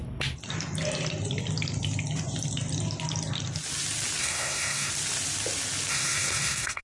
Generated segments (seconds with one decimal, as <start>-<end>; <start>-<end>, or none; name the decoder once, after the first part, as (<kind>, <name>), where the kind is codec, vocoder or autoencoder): 4.2-4.9 (codec, SNAC); 5.9-6.8